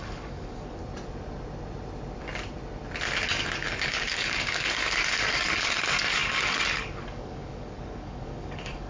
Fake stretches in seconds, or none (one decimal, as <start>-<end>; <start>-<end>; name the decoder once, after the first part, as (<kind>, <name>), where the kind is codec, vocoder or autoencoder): 0.0-0.8 (codec, DAC); 3.4-8.9